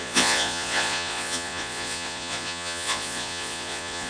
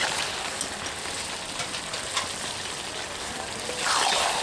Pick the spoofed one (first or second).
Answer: first